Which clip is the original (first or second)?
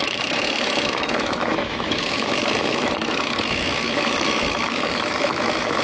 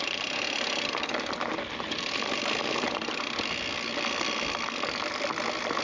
second